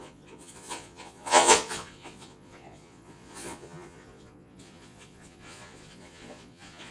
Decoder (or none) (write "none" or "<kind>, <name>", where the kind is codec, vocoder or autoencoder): vocoder, Vocos